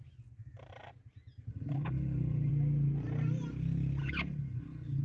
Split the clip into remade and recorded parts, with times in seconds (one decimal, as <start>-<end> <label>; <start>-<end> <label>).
0.0-1.5 recorded; 1.5-2.5 remade; 2.5-4.0 recorded; 4.0-5.0 remade